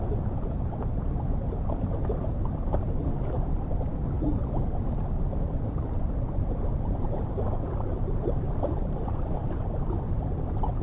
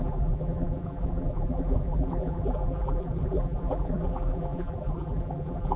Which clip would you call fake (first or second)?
second